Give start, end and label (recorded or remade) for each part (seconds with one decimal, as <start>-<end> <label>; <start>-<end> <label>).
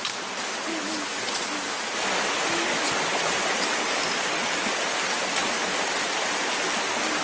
0.0-7.2 recorded